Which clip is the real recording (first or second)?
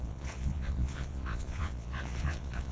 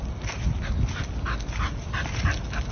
second